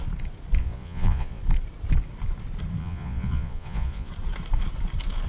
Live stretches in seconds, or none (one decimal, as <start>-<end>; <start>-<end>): 0.0-0.6; 1.4-2.8; 4.1-5.3

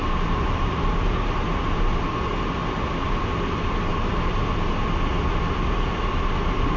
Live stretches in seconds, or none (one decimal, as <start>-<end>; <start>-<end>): 0.0-6.8